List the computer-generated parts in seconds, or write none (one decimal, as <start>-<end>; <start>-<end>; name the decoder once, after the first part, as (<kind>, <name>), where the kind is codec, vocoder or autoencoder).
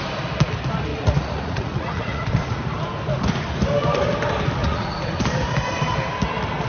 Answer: 0.9-2.6 (vocoder, Vocos); 4.6-5.2